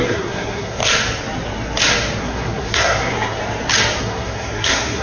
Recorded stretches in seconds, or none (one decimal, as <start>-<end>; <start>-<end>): 0.8-2.2; 3.4-4.0